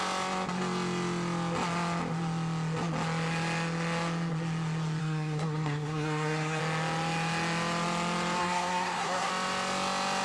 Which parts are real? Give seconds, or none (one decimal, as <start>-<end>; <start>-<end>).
0.0-5.0; 6.6-8.4; 9.3-10.2